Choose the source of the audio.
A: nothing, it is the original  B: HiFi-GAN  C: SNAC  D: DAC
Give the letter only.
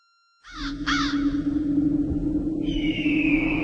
A